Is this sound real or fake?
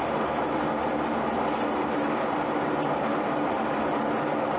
real